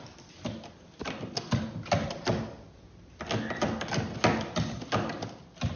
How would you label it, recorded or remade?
recorded